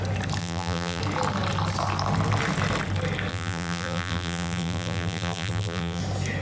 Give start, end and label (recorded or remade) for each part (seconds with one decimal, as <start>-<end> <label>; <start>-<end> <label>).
0.0-0.4 recorded; 0.4-1.0 remade; 1.0-3.3 recorded; 3.3-6.0 remade; 6.0-6.4 recorded